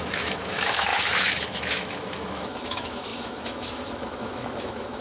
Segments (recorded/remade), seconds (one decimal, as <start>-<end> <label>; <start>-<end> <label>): 0.0-5.0 remade